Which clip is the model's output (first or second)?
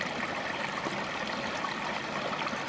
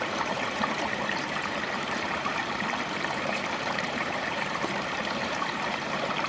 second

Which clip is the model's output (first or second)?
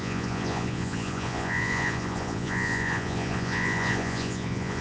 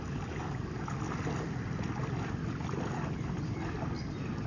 first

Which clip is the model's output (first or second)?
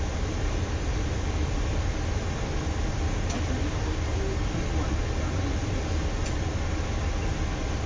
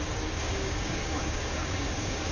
second